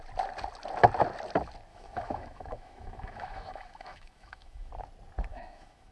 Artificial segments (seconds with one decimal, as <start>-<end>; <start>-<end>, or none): 1.7-4.7; 5.3-5.9